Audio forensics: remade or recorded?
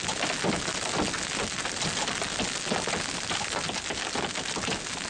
recorded